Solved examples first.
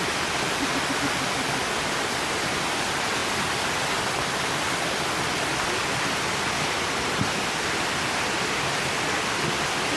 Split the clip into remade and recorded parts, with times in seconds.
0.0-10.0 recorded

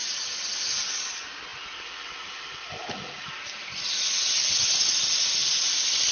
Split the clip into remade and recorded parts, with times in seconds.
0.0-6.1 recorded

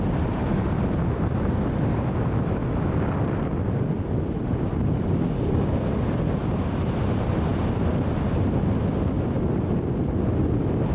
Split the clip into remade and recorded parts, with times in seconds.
0.0-10.9 recorded

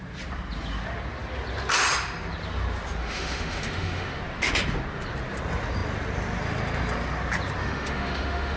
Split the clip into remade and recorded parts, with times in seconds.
0.0-3.0 recorded; 3.0-4.2 remade; 4.2-7.6 recorded; 7.6-8.6 remade